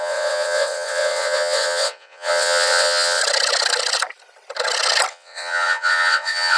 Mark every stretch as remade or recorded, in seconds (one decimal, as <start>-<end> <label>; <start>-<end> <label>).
0.0-3.2 remade; 3.2-5.1 recorded; 5.1-6.6 remade